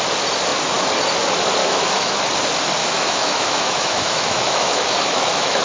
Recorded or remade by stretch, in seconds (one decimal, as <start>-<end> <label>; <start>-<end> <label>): 0.0-1.6 recorded; 1.6-2.2 remade; 2.2-2.8 recorded; 2.8-5.6 remade